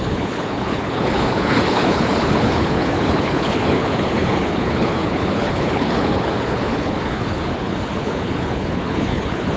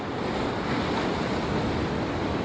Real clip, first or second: second